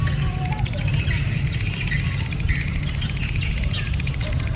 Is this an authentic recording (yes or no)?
yes